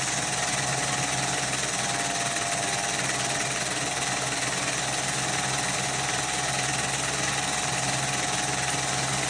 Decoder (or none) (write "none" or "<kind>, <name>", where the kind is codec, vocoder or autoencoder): none